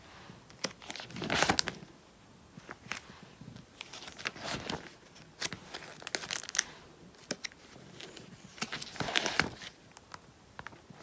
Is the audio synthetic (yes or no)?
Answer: no